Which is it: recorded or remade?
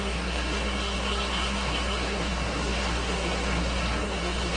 remade